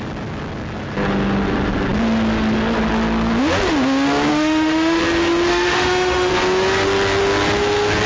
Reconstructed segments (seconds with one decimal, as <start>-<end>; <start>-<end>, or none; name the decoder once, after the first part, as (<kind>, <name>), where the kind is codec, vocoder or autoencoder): 4.3-5.0 (autoencoder, DAC-VAE); 5.5-6.3